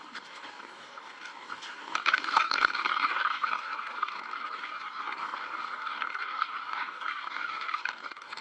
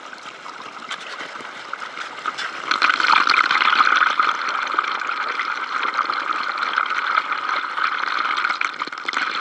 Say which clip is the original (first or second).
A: second